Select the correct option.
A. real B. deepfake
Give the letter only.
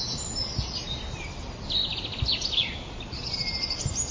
A